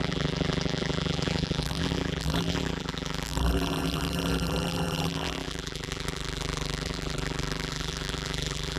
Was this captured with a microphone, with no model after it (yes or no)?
no